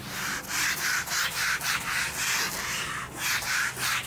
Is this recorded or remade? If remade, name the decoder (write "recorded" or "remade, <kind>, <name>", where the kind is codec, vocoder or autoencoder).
recorded